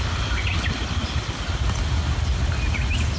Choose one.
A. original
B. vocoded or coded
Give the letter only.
A